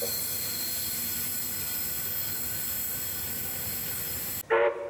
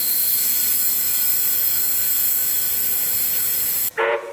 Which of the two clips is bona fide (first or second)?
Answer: first